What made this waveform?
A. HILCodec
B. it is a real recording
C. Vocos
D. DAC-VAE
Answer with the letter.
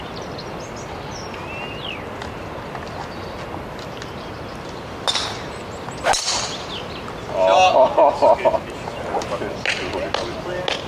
B